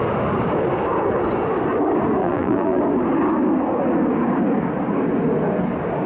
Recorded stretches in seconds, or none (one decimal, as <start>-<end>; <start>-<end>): 0.0-2.2; 2.8-6.1

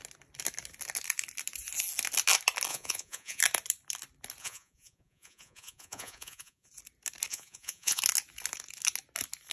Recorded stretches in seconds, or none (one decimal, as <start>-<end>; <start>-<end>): 0.0-2.7; 3.4-4.4; 6.7-7.3; 8.0-9.5